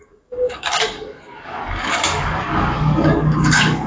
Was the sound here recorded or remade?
remade